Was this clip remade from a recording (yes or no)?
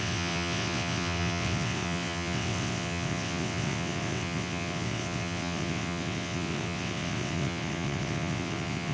yes